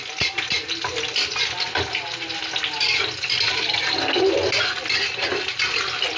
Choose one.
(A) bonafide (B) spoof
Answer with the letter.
A